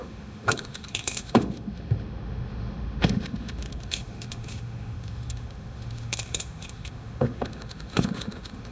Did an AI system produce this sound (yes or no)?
yes